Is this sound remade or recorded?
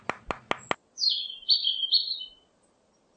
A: recorded